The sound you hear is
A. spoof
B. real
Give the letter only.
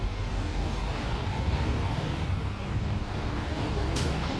A